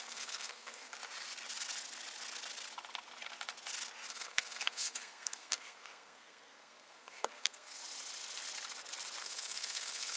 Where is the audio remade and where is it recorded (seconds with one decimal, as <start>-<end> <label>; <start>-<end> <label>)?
0.0-0.9 remade; 0.9-4.1 recorded; 4.1-7.8 remade; 7.8-9.2 recorded; 9.2-10.2 remade

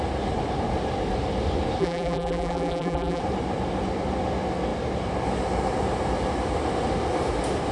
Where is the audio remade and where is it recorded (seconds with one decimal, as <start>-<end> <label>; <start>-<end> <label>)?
0.0-1.8 recorded; 1.8-3.2 remade; 3.2-7.7 recorded

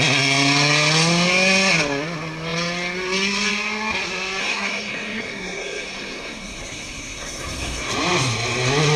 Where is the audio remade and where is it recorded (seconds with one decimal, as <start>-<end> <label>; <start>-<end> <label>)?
0.0-4.4 recorded; 4.4-7.9 remade; 7.9-9.0 recorded

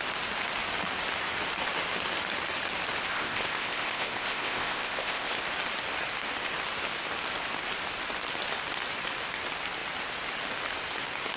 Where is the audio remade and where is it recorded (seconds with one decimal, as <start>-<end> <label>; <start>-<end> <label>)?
0.0-3.1 recorded; 3.1-5.4 remade; 5.4-11.4 recorded